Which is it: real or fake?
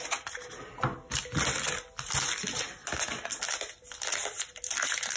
real